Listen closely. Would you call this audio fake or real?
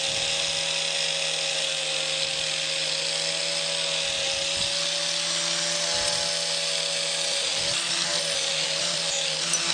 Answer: real